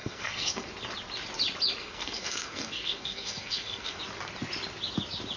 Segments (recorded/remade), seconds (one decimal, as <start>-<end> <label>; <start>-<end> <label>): 0.0-0.7 remade; 0.7-1.8 recorded; 1.8-4.0 remade; 4.0-5.4 recorded